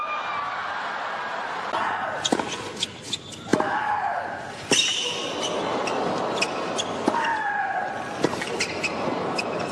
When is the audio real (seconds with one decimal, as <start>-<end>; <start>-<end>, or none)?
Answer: 0.0-7.3; 7.9-9.7